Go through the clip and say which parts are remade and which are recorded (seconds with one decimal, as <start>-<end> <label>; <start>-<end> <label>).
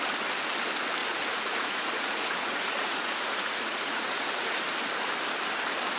0.0-1.0 recorded; 1.0-4.6 remade; 4.6-6.0 recorded